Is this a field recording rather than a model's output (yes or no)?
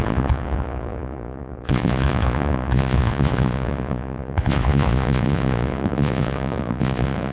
no